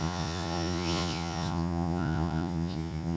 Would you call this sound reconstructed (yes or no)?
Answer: yes